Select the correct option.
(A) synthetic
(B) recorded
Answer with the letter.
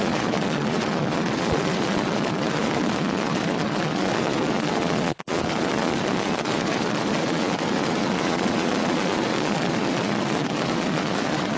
A